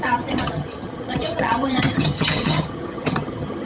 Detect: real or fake fake